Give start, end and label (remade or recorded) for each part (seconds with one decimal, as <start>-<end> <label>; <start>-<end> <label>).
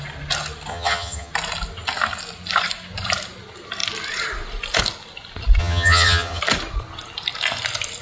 0.0-0.7 recorded; 0.7-1.3 remade; 1.3-5.6 recorded; 5.6-6.4 remade; 6.4-8.0 recorded